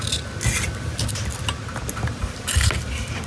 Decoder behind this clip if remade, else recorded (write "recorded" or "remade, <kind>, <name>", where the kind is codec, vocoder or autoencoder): recorded